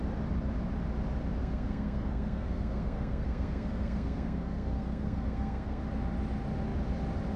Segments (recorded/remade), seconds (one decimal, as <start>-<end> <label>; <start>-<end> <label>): 0.0-1.4 recorded; 1.4-5.8 remade; 5.8-7.4 recorded